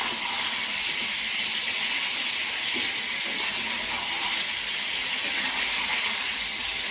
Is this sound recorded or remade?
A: recorded